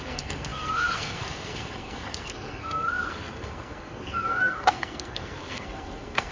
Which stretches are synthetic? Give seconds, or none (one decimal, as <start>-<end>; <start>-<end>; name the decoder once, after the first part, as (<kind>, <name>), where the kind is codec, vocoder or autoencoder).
0.0-6.3 (codec, SNAC)